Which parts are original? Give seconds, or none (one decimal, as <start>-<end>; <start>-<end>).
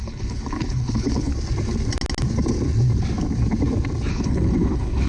1.3-4.1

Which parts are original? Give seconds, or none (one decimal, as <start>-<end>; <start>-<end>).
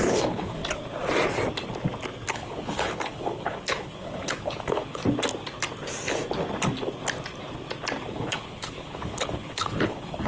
0.6-2.3; 5.0-8.1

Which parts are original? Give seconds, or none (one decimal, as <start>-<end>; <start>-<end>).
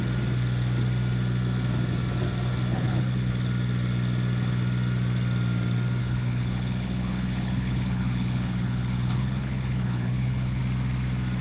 0.0-2.7; 3.3-6.0; 10.6-11.4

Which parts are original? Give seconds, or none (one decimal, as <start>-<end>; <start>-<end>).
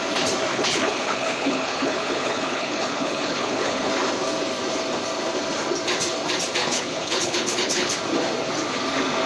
0.0-0.5; 3.9-6.6; 8.0-9.3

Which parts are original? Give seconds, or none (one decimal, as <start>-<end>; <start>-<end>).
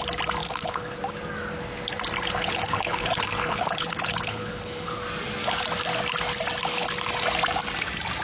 0.0-0.4; 1.0-2.4; 5.0-8.2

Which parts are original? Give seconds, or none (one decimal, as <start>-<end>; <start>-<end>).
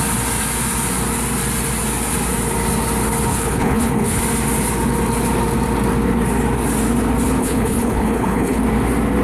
0.0-3.3; 4.2-7.4; 8.6-9.2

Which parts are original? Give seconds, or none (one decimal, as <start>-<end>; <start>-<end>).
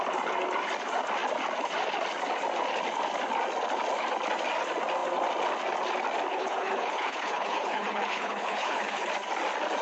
0.0-6.3; 9.1-9.8